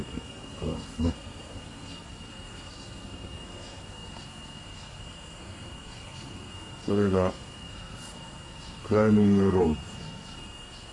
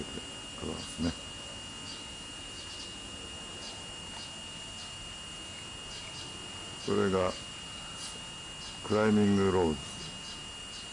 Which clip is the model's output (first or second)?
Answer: first